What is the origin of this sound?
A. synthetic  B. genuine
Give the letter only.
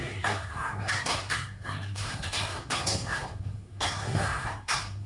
A